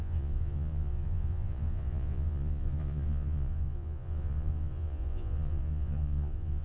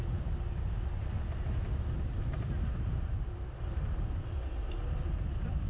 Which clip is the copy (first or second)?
first